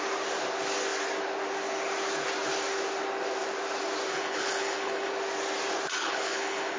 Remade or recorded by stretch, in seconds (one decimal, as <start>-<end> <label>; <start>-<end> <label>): 0.0-4.1 recorded; 4.1-5.1 remade; 5.1-6.0 recorded; 6.0-6.8 remade

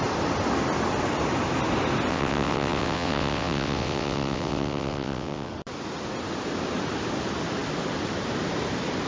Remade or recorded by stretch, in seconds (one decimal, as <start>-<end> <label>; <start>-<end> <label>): 0.0-2.1 recorded; 2.1-5.5 remade; 5.5-9.1 recorded

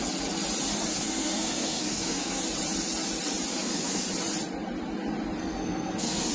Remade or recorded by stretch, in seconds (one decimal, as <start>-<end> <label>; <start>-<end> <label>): 0.0-0.9 recorded; 0.9-2.4 remade; 2.4-3.5 recorded; 3.5-4.1 remade; 4.1-5.4 recorded; 5.4-6.3 remade

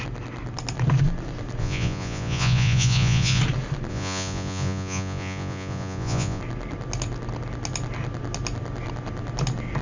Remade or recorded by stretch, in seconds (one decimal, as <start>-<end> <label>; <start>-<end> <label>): 0.0-1.6 recorded; 1.6-3.4 remade; 3.4-3.9 recorded; 3.9-6.4 remade; 6.4-9.8 recorded

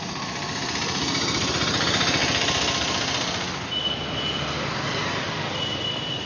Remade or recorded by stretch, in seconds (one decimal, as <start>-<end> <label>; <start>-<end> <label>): 0.0-2.2 remade; 2.2-6.3 recorded

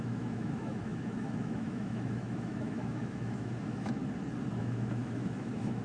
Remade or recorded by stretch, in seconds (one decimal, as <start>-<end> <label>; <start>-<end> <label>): 0.0-4.0 remade; 4.0-4.6 recorded; 4.6-5.8 remade

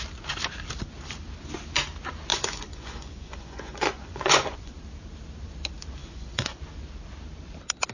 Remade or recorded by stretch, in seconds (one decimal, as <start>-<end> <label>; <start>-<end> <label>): 0.0-2.3 recorded; 2.3-4.7 remade; 4.7-6.0 recorded; 6.0-6.6 remade; 6.6-7.9 recorded